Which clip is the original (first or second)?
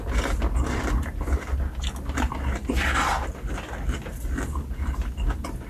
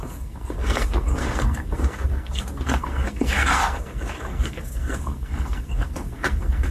first